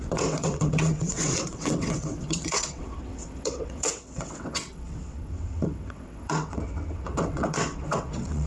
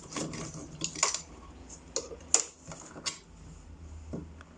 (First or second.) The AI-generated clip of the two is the first